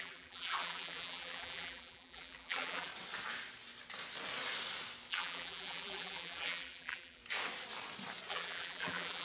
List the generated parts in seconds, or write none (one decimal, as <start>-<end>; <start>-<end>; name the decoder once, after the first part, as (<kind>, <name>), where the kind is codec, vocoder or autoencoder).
0.0-2.9 (vocoder, BigVGAN v2); 5.1-7.2; 8.3-9.2